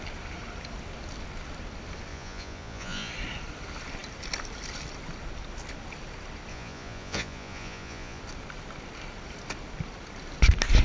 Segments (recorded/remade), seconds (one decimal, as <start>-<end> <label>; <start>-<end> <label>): 0.0-2.1 recorded; 2.1-3.1 remade; 3.1-6.5 recorded; 6.5-8.2 remade; 8.2-10.8 recorded